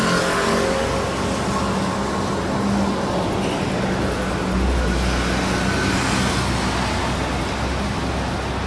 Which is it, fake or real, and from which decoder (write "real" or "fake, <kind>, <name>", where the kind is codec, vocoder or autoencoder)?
real